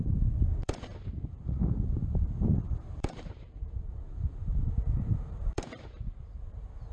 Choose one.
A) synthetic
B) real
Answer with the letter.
A